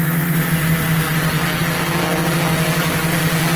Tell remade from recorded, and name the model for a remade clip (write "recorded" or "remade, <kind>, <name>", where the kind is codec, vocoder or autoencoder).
recorded